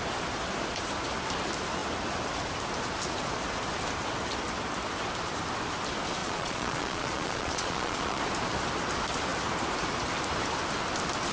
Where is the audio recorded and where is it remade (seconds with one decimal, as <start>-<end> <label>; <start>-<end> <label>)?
0.0-6.2 recorded; 6.2-8.2 remade; 8.2-11.3 recorded